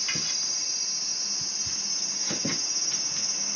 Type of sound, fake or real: real